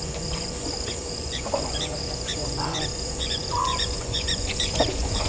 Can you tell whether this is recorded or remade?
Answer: remade